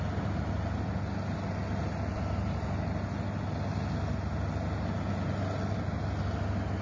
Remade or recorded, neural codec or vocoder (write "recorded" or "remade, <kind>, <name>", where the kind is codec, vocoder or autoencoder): recorded